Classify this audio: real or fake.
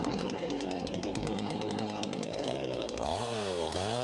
fake